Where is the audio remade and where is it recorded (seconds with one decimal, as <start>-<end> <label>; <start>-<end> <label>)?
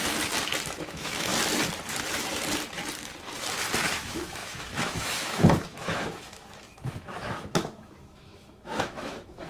0.0-0.8 recorded; 0.8-1.3 remade; 1.3-3.8 recorded; 3.8-9.5 remade